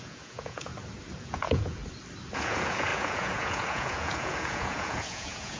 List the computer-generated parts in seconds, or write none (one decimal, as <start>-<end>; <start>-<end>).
0.0-0.7; 1.2-1.8; 2.3-5.6